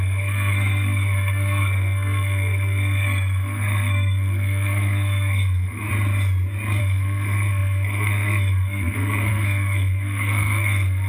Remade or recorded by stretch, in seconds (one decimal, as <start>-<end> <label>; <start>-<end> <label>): 0.0-5.9 remade; 5.9-6.8 recorded; 6.8-11.1 remade